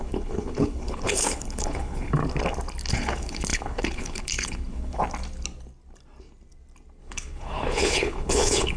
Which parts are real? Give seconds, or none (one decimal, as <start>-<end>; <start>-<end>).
2.2-2.9; 5.0-7.0